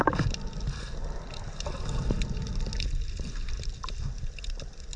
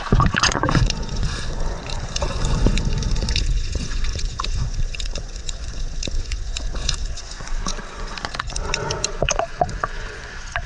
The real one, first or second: first